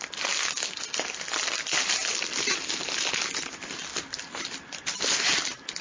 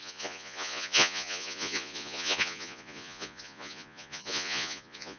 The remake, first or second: second